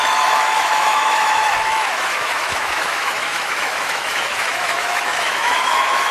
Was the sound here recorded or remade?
remade